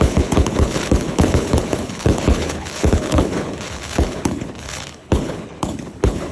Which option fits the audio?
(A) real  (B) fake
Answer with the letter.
B